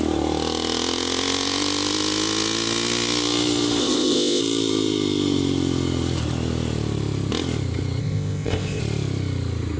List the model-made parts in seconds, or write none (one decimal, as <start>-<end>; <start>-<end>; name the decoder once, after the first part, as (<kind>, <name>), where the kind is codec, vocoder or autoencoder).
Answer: 3.8-4.4 (codec, ZipCodec); 8.0-8.8